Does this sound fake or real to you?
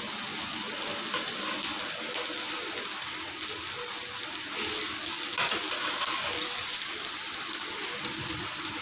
real